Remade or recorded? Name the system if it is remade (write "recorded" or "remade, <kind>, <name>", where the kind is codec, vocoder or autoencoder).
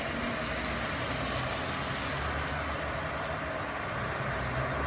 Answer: recorded